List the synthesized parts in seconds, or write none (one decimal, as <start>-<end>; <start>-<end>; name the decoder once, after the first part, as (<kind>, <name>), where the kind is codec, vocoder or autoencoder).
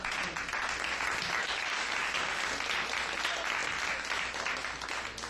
1.4-1.9 (codec, DAC)